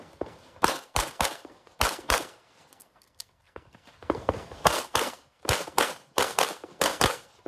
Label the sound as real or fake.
fake